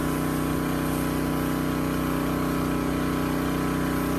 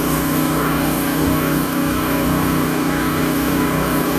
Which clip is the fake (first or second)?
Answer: second